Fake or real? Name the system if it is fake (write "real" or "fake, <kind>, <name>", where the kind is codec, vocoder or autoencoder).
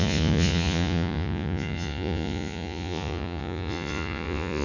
fake, vocoder, Vocos